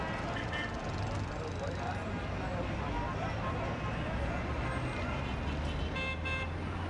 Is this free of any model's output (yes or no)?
yes